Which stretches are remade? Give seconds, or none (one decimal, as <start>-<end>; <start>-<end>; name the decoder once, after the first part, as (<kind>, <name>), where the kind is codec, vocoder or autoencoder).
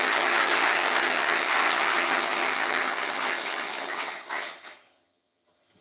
0.0-5.8 (vocoder, HiFi-GAN)